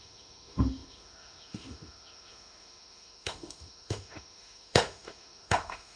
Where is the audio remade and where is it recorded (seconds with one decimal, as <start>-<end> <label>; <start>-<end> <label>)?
0.0-6.0 remade

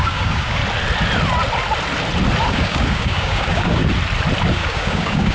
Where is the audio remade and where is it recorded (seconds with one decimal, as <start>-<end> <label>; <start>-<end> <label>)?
0.0-0.6 remade; 0.6-2.5 recorded; 2.5-3.8 remade; 3.8-4.5 recorded; 4.5-5.3 remade

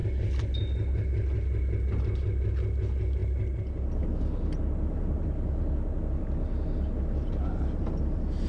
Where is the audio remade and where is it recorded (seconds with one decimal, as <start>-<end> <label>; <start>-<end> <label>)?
0.0-8.5 recorded

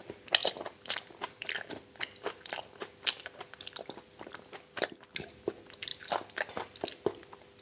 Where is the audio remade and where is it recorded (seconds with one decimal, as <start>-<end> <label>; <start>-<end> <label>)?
0.0-0.4 recorded; 0.4-4.9 remade; 4.9-5.9 recorded; 5.9-6.5 remade; 6.5-7.6 recorded

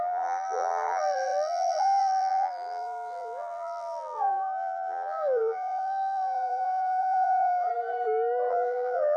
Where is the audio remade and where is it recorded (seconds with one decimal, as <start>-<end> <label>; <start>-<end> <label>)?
0.0-7.7 remade; 7.7-8.5 recorded; 8.5-9.2 remade

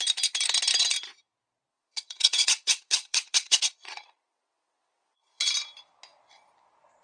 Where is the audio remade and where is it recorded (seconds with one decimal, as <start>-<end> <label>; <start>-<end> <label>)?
0.0-1.7 recorded; 1.7-5.5 remade; 5.5-7.0 recorded

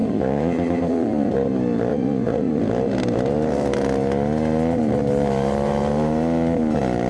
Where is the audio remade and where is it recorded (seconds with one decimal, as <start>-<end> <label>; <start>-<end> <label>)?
0.0-1.3 remade; 1.3-1.9 recorded; 1.9-2.6 remade; 2.6-7.1 recorded